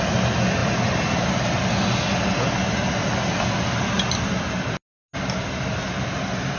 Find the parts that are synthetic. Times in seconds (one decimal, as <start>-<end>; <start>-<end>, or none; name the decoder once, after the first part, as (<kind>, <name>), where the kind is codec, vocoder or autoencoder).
none